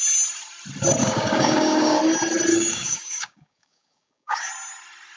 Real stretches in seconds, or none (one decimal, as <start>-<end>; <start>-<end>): 0.0-1.0; 2.0-2.5; 4.5-5.2